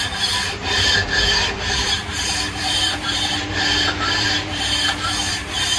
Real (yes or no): no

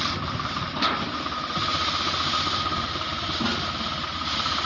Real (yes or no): no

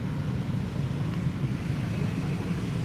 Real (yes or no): no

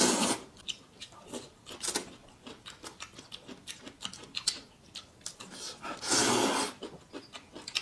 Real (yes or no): yes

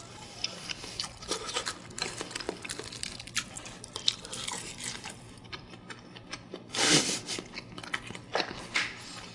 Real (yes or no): yes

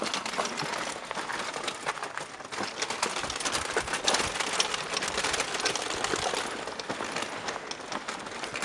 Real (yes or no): yes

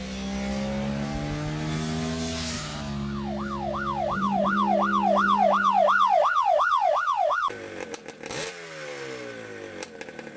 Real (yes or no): yes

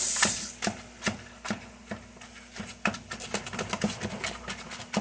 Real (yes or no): yes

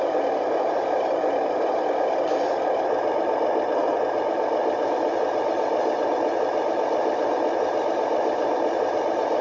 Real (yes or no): yes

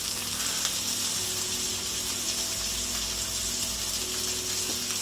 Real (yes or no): yes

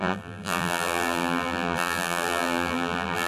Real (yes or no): no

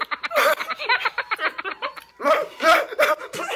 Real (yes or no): yes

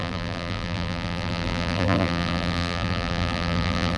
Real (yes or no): no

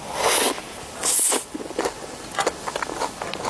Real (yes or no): yes